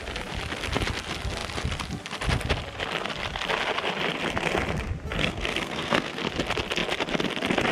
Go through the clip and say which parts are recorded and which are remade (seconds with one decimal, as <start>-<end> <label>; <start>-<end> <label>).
0.0-5.2 recorded; 5.2-6.2 remade; 6.2-7.7 recorded